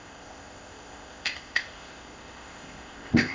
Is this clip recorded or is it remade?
remade